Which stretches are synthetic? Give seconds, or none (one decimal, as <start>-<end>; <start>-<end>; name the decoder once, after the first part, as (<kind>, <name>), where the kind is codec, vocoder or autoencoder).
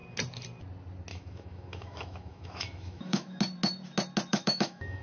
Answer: 1.1-3.4 (autoencoder, DAC-VAE); 4.3-5.0